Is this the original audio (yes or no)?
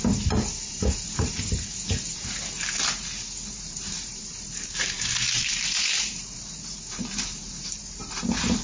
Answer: no